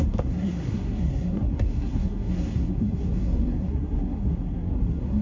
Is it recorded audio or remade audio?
remade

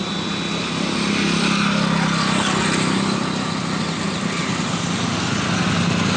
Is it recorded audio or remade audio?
recorded